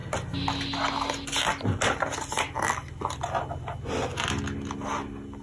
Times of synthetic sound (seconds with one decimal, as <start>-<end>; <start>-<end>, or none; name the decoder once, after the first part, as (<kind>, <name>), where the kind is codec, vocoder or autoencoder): none